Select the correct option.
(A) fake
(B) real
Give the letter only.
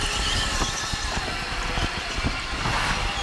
B